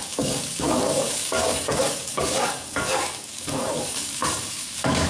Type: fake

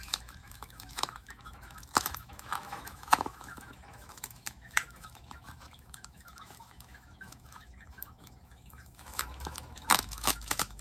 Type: fake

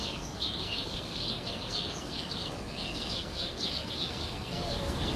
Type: fake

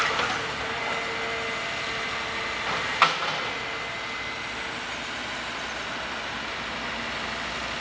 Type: real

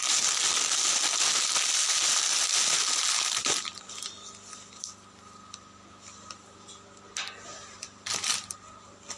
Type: real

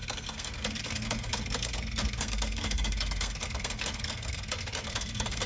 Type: fake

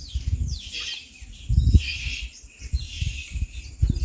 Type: real